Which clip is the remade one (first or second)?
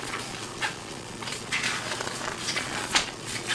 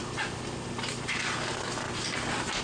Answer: first